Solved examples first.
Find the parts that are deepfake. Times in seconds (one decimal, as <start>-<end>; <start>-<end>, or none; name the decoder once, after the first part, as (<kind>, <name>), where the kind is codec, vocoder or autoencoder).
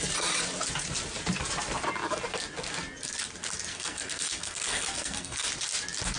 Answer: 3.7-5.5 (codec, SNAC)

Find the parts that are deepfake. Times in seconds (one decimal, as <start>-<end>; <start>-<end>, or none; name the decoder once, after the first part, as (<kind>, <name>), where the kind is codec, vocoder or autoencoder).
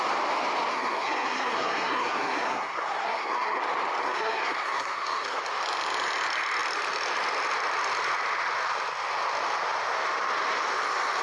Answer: 0.7-3.6 (codec, SNAC); 4.0-5.4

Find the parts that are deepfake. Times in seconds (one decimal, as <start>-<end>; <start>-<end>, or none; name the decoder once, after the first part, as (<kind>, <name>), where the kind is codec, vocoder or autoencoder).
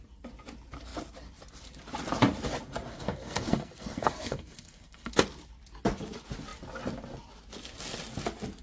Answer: 2.9-5.1 (codec, SNAC)